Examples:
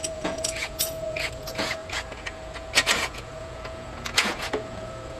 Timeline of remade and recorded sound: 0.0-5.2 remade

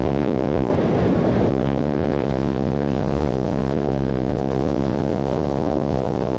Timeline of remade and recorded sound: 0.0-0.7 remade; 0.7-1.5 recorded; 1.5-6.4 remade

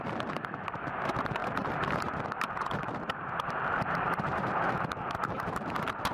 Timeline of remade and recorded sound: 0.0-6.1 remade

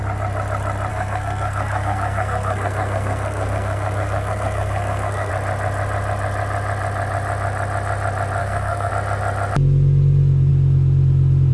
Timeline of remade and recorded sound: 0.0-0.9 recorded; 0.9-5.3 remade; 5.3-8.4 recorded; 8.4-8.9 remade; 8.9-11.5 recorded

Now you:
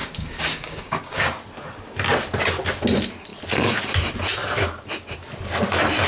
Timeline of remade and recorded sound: 0.0-1.4 remade; 1.4-6.1 recorded

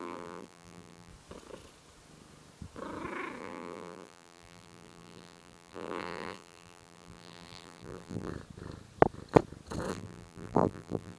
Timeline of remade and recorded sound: 0.0-1.1 remade; 1.1-3.4 recorded; 3.4-8.3 remade; 8.3-9.9 recorded; 9.9-11.2 remade

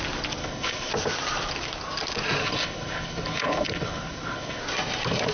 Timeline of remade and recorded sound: 0.0-0.4 recorded; 0.4-0.9 remade; 0.9-2.4 recorded; 2.4-4.6 remade; 4.6-5.3 recorded

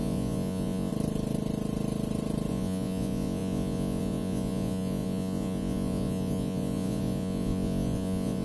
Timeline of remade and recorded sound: 0.0-0.9 remade; 0.9-2.5 recorded; 2.5-8.4 remade